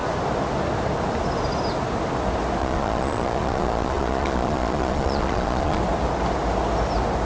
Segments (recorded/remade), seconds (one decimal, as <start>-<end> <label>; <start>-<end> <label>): 0.0-2.6 recorded; 2.6-5.8 remade; 5.8-7.2 recorded